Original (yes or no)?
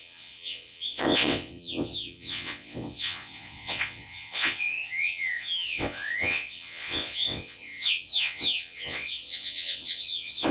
no